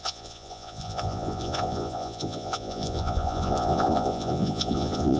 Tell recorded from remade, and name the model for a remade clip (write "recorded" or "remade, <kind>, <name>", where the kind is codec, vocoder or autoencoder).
remade, vocoder, Vocos